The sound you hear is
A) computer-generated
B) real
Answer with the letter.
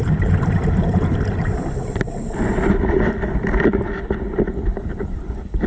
A